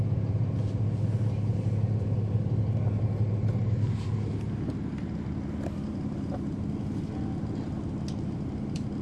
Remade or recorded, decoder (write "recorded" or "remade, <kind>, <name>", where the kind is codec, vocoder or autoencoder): recorded